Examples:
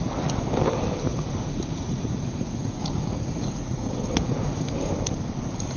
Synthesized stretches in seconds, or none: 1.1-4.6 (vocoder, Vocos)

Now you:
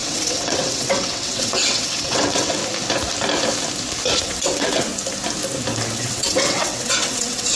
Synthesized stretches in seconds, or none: 0.0-2.6 (vocoder, WaveNeXt); 4.2-4.9; 6.0-7.6

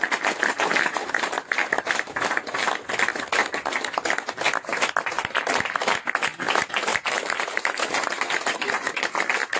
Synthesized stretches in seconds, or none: 0.0-2.6 (vocoder, BigVGAN v2); 6.7-9.6

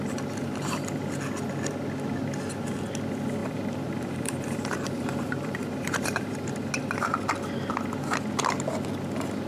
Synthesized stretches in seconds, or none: 3.4-6.7 (vocoder, BigVGAN v2)

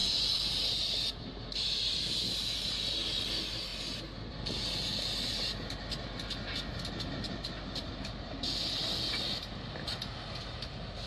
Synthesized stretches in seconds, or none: 0.0-1.8 (vocoder, BigVGAN v2)

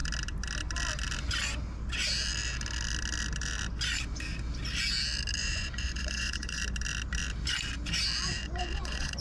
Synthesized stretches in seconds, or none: 5.4-6.6 (vocoder, Vocos); 8.4-9.2

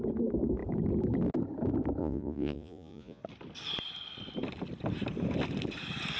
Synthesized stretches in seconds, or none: 2.0-3.2 (vocoder, Vocos)

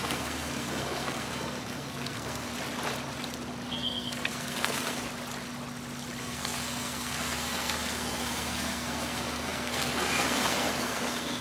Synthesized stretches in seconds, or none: 0.0-2.5 (codec, SNAC); 3.7-5.1; 6.2-11.4